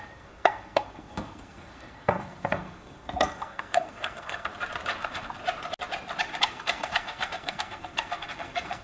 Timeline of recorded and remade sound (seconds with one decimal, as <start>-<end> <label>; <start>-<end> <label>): 0.0-4.5 remade; 4.5-5.0 recorded; 5.0-5.4 remade; 5.4-6.4 recorded; 6.4-8.8 remade